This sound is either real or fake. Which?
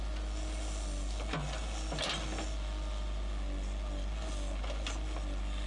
real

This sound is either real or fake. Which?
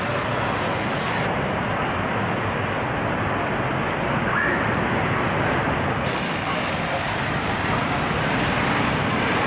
real